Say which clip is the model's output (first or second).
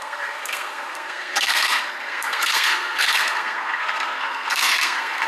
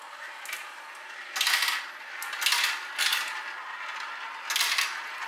first